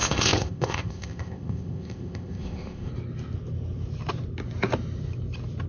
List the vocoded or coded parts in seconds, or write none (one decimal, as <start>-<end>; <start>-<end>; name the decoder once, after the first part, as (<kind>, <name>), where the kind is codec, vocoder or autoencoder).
0.0-2.9 (codec, ZipCodec)